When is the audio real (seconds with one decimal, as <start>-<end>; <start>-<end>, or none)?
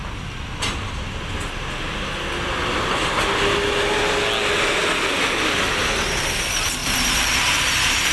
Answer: 0.0-8.1